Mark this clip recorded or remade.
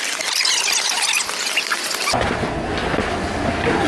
recorded